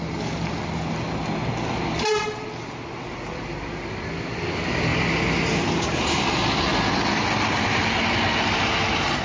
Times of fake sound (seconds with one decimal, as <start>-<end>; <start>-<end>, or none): none